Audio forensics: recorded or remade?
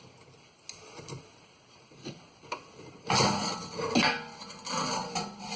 recorded